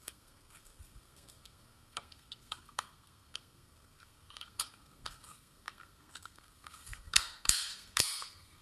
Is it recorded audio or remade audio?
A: remade